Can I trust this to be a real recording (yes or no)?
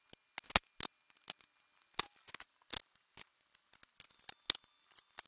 yes